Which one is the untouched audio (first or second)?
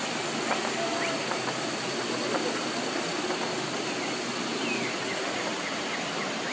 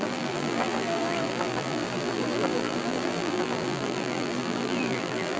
first